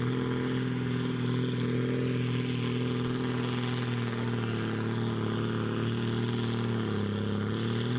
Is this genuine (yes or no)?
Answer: yes